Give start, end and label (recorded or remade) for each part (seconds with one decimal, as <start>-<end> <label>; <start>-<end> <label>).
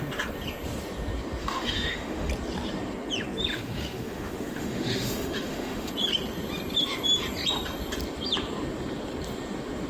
0.0-1.4 recorded; 1.4-2.3 remade; 2.3-3.5 recorded; 3.5-5.9 remade; 5.9-9.9 recorded